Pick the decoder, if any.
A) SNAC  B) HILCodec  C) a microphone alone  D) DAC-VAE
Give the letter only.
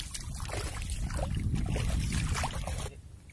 C